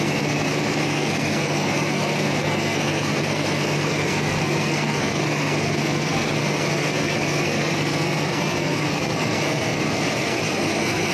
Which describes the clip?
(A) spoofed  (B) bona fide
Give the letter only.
A